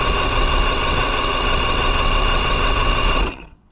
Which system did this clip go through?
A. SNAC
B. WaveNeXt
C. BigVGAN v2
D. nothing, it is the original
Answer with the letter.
B